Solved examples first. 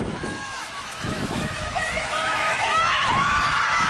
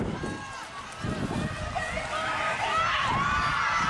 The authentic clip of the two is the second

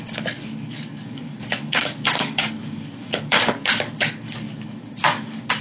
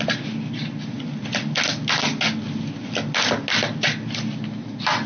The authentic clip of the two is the second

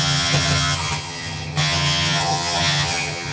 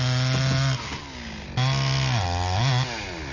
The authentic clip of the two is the second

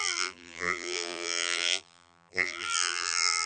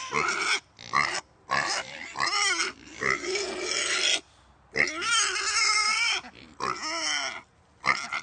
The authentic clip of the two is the second